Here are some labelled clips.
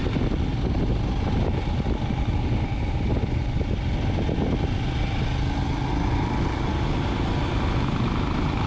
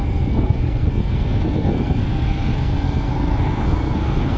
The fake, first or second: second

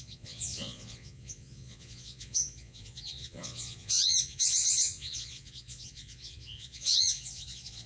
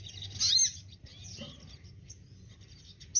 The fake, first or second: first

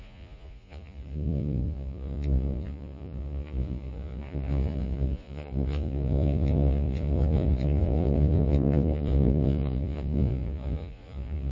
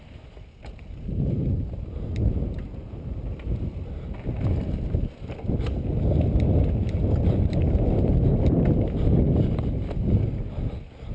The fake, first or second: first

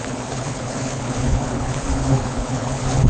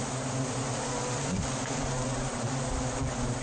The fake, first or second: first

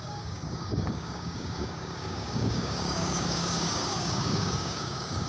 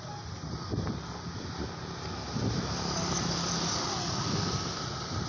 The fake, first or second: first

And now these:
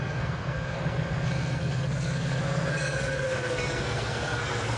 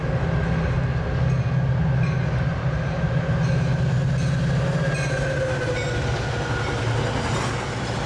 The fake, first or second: first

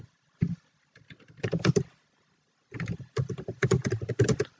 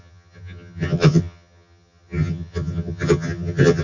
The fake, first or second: second